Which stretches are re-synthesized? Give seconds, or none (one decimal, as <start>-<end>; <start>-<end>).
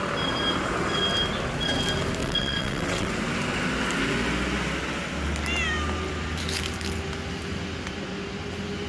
2.2-3.1